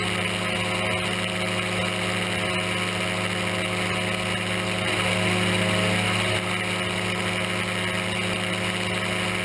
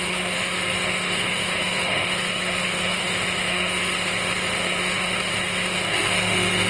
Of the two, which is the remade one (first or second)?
second